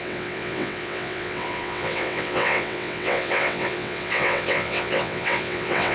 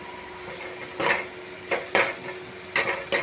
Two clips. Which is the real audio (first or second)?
second